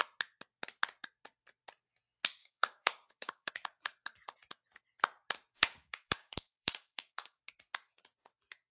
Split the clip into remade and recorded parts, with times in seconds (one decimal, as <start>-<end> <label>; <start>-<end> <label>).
0.0-2.4 recorded; 2.4-3.5 remade; 3.5-5.6 recorded; 5.6-7.4 remade; 7.4-8.7 recorded